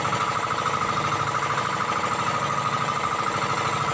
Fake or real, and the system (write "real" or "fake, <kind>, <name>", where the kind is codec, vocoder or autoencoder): real